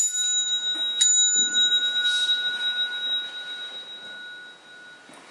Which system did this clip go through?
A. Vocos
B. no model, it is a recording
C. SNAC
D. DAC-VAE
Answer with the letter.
B